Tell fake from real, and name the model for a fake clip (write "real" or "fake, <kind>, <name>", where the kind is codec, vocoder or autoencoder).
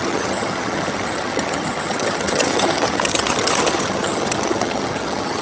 fake, vocoder, HiFi-GAN